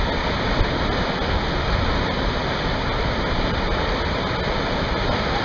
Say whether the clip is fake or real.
real